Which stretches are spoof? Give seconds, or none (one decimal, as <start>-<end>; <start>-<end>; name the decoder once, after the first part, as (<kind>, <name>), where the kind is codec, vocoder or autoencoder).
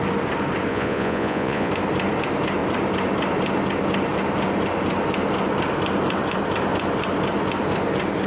0.7-1.7 (vocoder, Vocos)